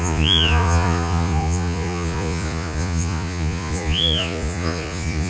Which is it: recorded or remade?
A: remade